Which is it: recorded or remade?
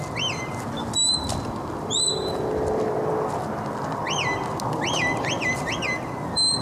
recorded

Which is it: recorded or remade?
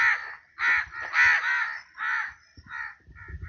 recorded